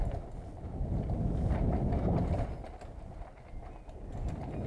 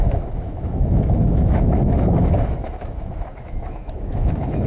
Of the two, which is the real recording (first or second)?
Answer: first